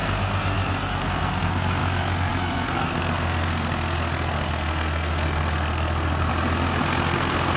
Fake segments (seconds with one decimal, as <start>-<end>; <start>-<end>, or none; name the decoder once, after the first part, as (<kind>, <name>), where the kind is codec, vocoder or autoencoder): 0.0-6.3 (codec, SNAC); 6.8-7.6